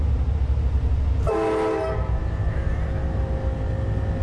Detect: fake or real real